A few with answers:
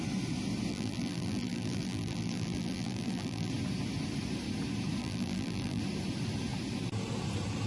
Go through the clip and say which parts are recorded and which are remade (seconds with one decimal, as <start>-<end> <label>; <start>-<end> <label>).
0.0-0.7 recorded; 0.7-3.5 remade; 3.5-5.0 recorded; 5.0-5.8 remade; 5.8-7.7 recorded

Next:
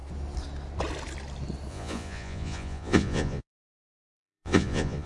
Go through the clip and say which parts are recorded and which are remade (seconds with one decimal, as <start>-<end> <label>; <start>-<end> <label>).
0.0-1.7 recorded; 1.7-5.1 remade

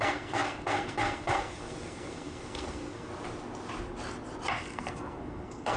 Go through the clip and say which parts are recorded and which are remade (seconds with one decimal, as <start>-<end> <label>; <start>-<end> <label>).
0.0-3.1 remade; 3.1-4.5 recorded; 4.5-5.8 remade